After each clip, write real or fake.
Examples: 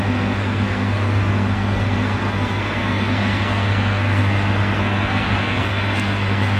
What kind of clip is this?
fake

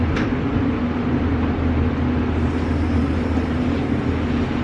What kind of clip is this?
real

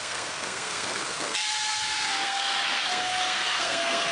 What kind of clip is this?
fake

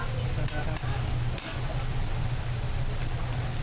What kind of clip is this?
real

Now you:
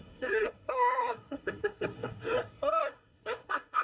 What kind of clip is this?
fake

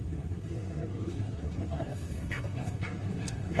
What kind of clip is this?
fake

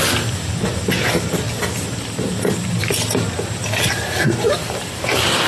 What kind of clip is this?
real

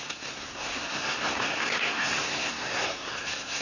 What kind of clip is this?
fake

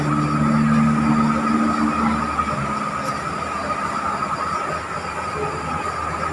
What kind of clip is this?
real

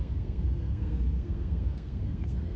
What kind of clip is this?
fake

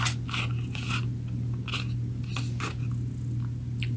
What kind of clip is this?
real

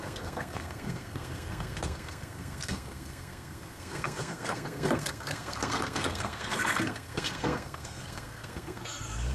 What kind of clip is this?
fake